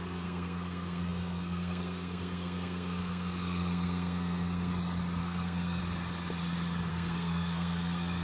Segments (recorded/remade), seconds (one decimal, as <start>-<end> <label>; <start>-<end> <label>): 0.0-4.7 remade; 4.7-5.2 recorded; 5.2-5.8 remade; 5.8-6.9 recorded; 6.9-8.2 remade